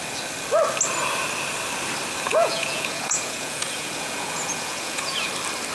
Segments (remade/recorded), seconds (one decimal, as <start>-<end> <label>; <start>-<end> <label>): 0.0-2.3 recorded; 2.3-5.3 remade; 5.3-5.7 recorded